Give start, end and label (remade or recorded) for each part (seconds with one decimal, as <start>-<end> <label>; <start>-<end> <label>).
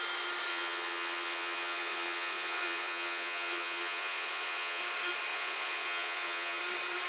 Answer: 0.0-0.5 recorded; 0.5-4.8 remade; 4.8-5.3 recorded; 5.3-6.6 remade; 6.6-7.1 recorded